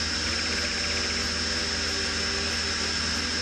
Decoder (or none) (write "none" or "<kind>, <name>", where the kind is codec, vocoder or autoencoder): none